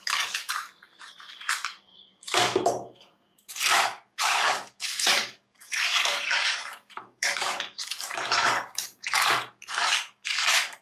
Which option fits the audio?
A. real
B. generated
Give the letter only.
B